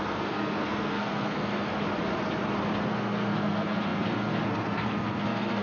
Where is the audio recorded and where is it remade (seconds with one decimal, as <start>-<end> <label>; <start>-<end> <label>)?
0.0-1.7 remade; 1.7-2.9 recorded; 2.9-5.6 remade